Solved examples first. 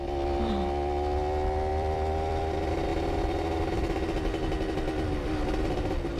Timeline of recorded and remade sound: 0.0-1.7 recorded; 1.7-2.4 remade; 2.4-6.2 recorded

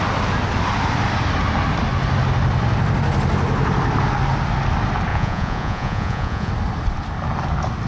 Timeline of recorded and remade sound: 0.0-5.1 recorded; 5.1-6.5 remade; 6.5-7.9 recorded

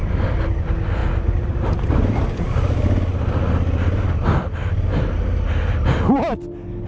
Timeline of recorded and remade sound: 0.0-6.9 recorded

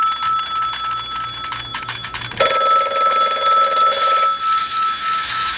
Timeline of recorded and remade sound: 0.0-1.7 recorded; 1.7-2.2 remade; 2.2-4.6 recorded; 4.6-5.6 remade

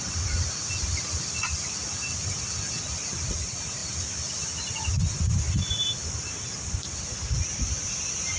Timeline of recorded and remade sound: 0.0-8.4 recorded

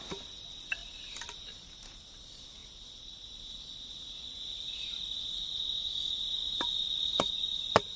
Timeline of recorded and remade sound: 0.0-2.6 recorded; 2.6-5.3 remade; 5.3-6.4 recorded; 6.4-7.3 remade; 7.3-8.0 recorded

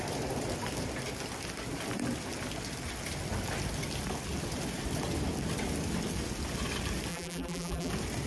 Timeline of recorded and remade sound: 0.0-7.1 recorded; 7.1-7.9 remade; 7.9-8.3 recorded

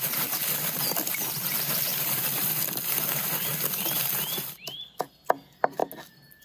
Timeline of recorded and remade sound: 0.0-1.9 recorded; 1.9-4.2 remade; 4.2-6.4 recorded